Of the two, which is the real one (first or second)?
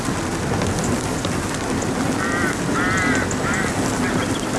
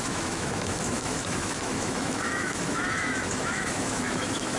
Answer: first